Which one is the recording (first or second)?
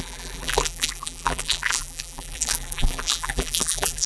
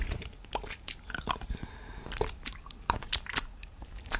second